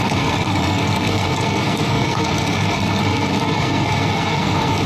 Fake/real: fake